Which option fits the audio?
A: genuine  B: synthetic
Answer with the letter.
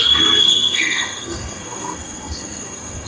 B